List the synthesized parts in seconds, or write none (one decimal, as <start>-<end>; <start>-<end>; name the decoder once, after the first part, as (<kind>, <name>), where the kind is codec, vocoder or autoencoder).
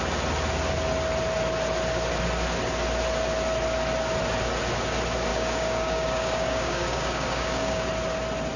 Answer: 5.3-7.9 (codec, DAC)